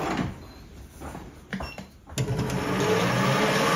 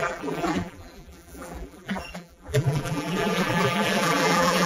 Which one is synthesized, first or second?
second